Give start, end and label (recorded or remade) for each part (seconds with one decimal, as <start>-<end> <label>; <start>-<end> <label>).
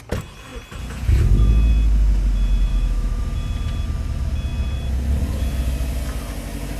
0.0-2.7 recorded; 2.7-3.2 remade; 3.2-6.8 recorded